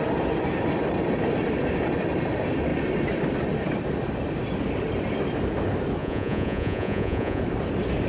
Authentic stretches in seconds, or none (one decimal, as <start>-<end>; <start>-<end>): 0.0-6.0; 7.4-8.1